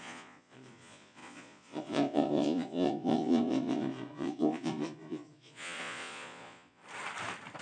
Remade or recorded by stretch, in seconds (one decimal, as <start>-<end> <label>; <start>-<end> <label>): 0.0-6.8 remade; 6.8-7.6 recorded